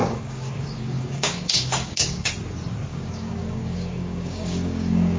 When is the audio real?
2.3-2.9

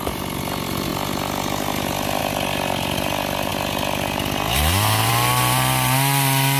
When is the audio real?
0.0-6.6

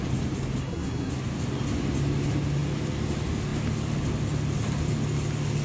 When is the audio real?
0.0-0.6; 1.1-5.6

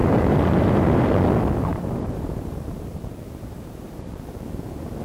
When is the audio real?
1.1-1.7

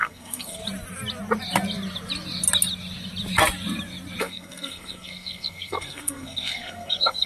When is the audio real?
0.6-4.2

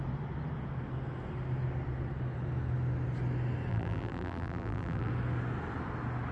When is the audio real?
0.0-3.7; 5.1-6.3

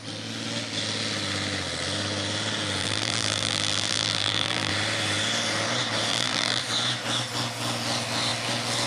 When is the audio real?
0.0-2.8; 4.7-6.1; 6.6-8.9